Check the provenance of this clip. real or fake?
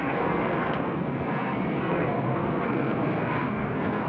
fake